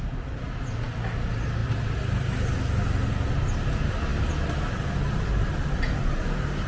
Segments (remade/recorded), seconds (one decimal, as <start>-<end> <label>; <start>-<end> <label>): 0.0-6.7 recorded